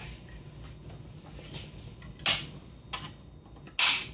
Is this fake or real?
real